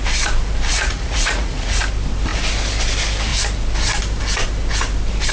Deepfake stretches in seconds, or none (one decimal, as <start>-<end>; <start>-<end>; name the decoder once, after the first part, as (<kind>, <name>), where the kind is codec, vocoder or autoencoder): 0.7-1.8 (vocoder, Vocos)